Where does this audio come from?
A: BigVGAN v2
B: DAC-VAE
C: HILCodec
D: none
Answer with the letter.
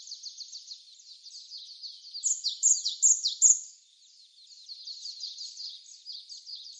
D